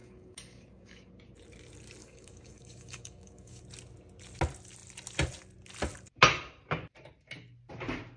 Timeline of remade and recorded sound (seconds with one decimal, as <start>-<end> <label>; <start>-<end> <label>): 0.0-1.1 remade; 1.1-2.0 recorded; 2.0-3.6 remade; 3.6-8.2 recorded